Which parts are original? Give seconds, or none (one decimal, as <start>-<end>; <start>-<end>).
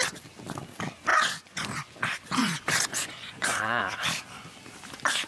0.0-1.1; 1.8-2.4; 3.8-5.3